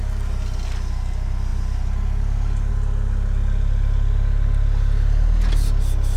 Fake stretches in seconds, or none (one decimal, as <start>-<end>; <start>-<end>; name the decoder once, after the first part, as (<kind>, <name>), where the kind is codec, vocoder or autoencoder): none